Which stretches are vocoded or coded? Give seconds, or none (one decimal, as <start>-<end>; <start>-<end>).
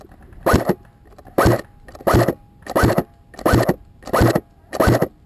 none